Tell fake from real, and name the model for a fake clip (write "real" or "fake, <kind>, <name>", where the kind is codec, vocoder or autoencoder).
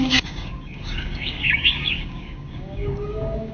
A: fake, codec, DAC